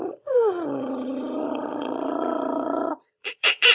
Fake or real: fake